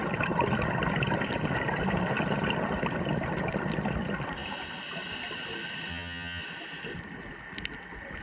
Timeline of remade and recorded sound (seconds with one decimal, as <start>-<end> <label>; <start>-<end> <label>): 0.0-5.9 recorded; 5.9-6.4 remade; 6.4-8.2 recorded